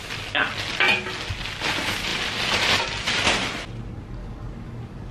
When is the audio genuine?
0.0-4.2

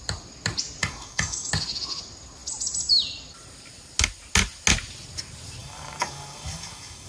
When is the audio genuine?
0.0-0.8; 1.5-5.6

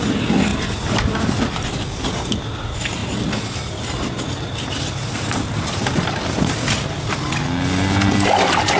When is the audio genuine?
0.0-8.8

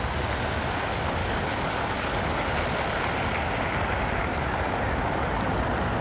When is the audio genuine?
0.0-1.2; 2.6-4.2; 5.5-6.0

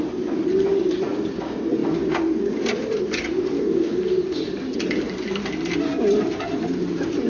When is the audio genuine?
0.0-7.3

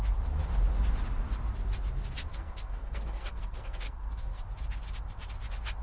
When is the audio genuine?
0.0-2.3; 4.4-5.8

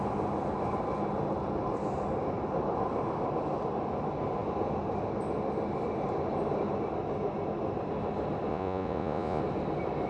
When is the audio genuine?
0.0-8.5; 9.4-10.1